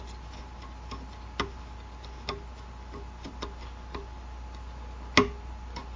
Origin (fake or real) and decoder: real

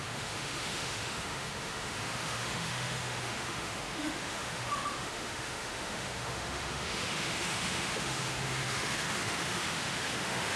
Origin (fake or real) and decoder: fake, autoencoder, DAC-VAE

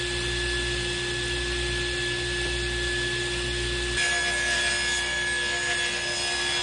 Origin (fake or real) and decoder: real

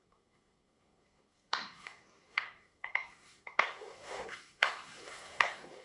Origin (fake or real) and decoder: fake, codec, SNAC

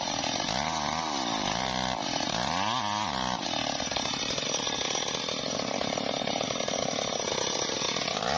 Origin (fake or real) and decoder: real